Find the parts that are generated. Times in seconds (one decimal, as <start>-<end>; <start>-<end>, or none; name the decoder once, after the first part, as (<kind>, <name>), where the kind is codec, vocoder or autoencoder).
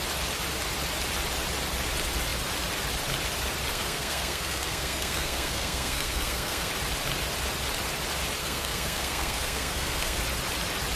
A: 3.7-6.7 (codec, SNAC); 8.4-10.2